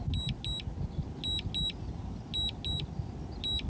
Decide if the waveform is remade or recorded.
recorded